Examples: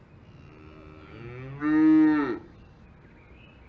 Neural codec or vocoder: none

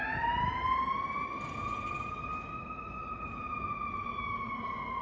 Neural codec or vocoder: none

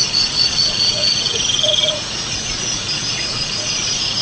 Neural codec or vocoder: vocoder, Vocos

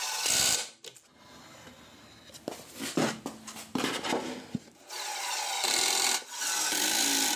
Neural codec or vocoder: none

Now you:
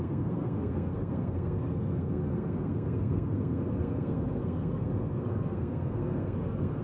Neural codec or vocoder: codec, SNAC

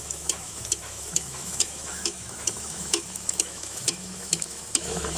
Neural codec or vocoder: autoencoder, DAC-VAE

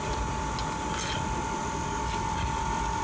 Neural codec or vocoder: vocoder, BigVGAN v2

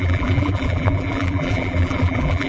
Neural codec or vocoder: vocoder, BigVGAN v2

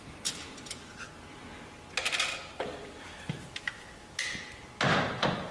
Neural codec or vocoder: none